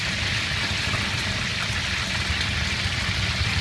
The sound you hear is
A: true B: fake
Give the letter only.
A